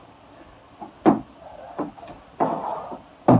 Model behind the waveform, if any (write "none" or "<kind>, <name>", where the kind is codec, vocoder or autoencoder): none